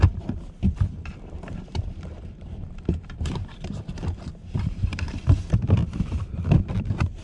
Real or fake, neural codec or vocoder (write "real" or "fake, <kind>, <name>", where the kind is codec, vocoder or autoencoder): fake, vocoder, BigVGAN v2